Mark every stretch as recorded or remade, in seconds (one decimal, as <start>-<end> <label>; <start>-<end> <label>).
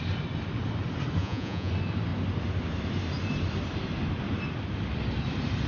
0.0-1.2 recorded; 1.2-1.7 remade; 1.7-5.7 recorded